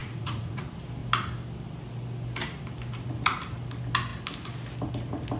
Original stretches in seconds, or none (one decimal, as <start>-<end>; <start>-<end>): 0.6-5.4